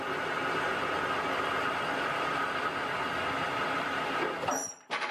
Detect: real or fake real